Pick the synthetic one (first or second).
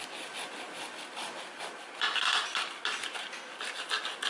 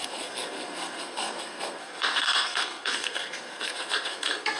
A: second